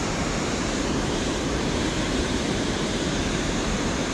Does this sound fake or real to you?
fake